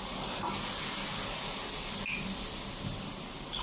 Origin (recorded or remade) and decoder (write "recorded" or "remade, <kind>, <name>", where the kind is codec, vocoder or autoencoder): recorded